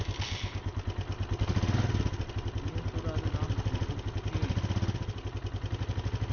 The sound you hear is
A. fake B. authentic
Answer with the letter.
B